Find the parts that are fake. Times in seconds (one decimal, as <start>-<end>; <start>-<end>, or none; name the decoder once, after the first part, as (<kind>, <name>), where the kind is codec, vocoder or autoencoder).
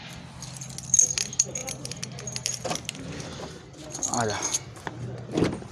none